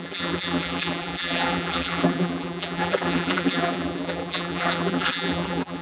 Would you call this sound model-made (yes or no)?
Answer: yes